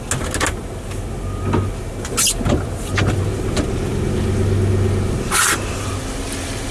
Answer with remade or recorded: recorded